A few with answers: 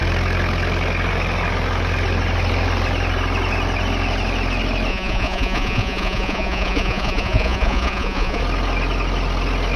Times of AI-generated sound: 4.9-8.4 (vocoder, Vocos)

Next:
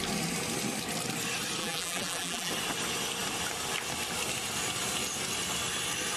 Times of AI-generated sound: 1.6-2.5 (vocoder, BigVGAN v2)

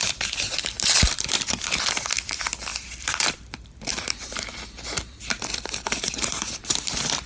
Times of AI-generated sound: 0.0-7.3 (vocoder, BigVGAN v2)

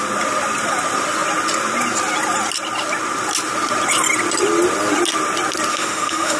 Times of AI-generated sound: 5.7-6.4 (autoencoder, DAC-VAE)

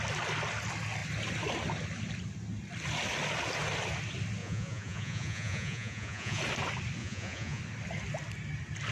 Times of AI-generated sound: 4.4-6.4 (vocoder, Vocos); 7.0-7.6

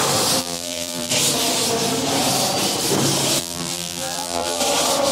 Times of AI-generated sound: 0.4-1.1 (vocoder, BigVGAN v2); 3.4-4.6

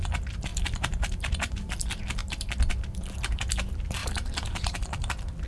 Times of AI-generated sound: 0.5-1.7 (vocoder, BigVGAN v2); 2.2-2.7; 4.0-5.1

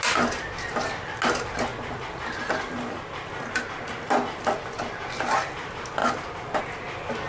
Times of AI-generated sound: none